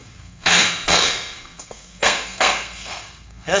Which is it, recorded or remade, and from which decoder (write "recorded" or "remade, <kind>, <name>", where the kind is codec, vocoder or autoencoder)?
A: remade, codec, SNAC